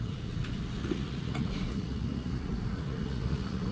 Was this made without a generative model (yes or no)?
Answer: no